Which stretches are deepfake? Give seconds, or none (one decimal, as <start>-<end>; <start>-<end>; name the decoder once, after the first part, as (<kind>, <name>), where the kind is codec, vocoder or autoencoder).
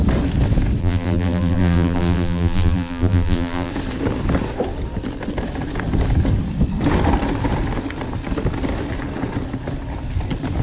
0.8-3.7 (vocoder, BigVGAN v2)